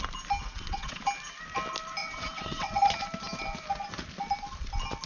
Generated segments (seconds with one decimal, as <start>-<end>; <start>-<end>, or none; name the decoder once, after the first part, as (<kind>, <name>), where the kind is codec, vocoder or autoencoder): 0.4-1.0 (vocoder, WaveNeXt); 2.0-2.8